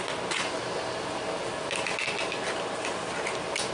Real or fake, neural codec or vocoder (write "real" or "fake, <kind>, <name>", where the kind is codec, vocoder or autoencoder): real